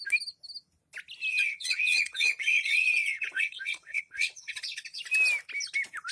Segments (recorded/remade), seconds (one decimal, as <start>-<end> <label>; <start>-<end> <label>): 0.0-1.3 recorded; 1.3-5.0 remade; 5.0-6.1 recorded